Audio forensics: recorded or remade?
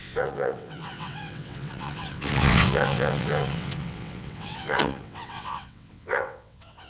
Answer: remade